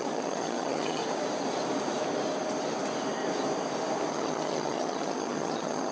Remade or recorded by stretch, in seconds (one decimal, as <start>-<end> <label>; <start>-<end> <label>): 0.0-1.0 remade; 1.0-4.1 recorded; 4.1-5.9 remade